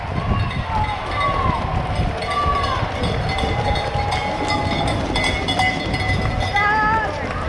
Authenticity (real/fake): real